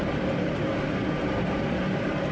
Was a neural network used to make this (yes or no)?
yes